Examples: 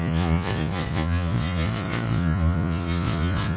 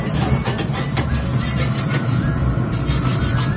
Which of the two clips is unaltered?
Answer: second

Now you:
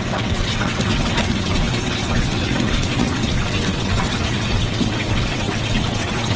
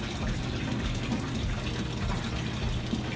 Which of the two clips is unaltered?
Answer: second